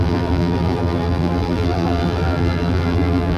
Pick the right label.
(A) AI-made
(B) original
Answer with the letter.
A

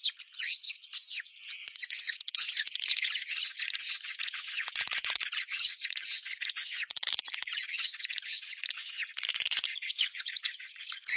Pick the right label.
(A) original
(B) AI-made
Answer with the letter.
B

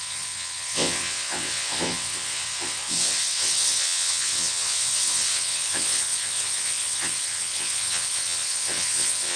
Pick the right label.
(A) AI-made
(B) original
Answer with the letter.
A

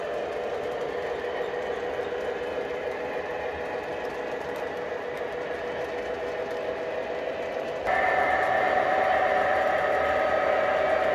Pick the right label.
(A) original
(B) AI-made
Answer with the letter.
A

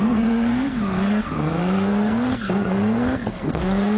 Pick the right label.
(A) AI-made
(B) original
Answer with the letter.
A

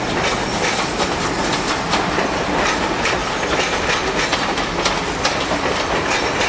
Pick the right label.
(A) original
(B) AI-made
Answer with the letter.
A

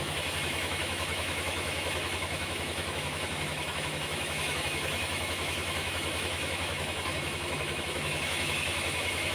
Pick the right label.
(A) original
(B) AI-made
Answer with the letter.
B